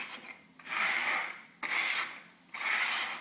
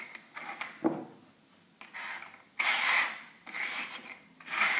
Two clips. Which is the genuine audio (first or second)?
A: first